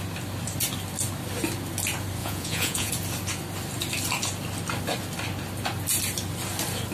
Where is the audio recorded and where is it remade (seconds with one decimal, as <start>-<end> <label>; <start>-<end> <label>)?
0.0-2.2 recorded; 2.2-2.9 remade; 2.9-6.9 recorded